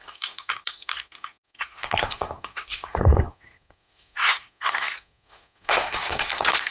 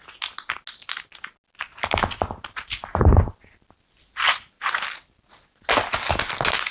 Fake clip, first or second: first